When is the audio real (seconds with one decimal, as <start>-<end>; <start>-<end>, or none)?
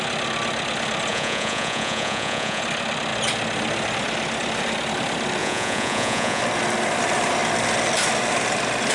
0.0-1.1; 2.6-5.4; 6.4-8.9